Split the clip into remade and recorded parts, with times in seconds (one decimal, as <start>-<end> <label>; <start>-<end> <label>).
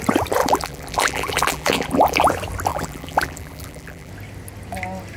0.0-0.4 recorded; 0.4-2.3 remade; 2.3-2.7 recorded; 2.7-4.1 remade; 4.1-5.2 recorded